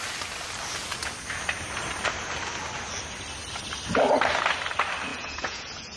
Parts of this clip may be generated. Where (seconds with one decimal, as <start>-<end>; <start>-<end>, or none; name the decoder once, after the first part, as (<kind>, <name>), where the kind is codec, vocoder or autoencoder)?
5.1-6.0 (vocoder, Vocos)

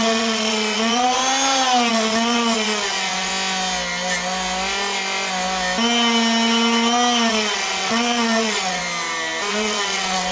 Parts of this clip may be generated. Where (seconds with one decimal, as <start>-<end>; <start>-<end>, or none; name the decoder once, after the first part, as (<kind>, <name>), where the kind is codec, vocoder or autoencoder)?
0.0-1.2 (vocoder, WaveNeXt); 1.9-3.3; 7.3-8.8; 9.5-10.3

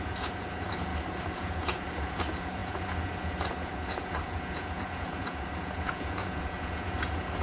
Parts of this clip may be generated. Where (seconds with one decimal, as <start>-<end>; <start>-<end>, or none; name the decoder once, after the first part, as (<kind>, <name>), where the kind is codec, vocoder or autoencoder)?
0.0-7.4 (vocoder, Vocos)

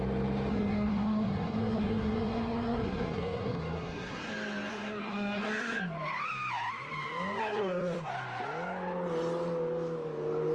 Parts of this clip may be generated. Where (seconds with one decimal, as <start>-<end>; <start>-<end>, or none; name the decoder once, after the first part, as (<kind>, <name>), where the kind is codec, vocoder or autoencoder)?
0.5-4.3 (codec, SNAC); 4.7-5.8; 7.4-8.1